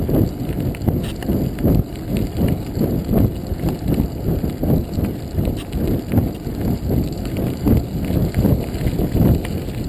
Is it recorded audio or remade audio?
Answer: recorded